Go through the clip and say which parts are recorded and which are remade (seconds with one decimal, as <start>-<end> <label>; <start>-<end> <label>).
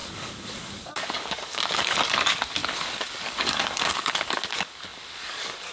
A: 0.0-5.7 remade